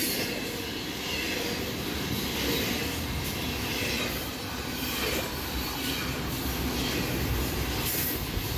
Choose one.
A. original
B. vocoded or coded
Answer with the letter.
A